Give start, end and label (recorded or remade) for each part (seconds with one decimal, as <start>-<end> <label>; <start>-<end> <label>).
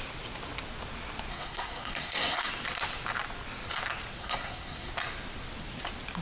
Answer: 0.0-1.3 recorded; 1.3-2.5 remade; 2.5-4.2 recorded; 4.2-4.9 remade; 4.9-6.2 recorded